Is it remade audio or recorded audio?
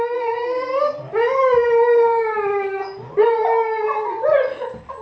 recorded